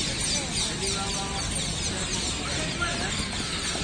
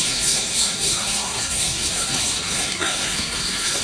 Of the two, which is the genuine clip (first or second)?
first